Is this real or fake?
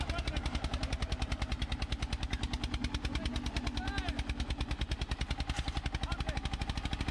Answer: real